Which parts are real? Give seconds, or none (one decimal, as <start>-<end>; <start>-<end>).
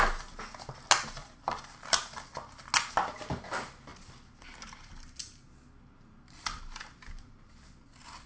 0.0-1.2; 2.0-8.3